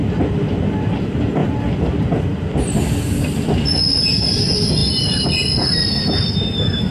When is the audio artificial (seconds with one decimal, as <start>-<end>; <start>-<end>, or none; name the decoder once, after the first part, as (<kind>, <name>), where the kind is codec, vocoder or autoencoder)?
none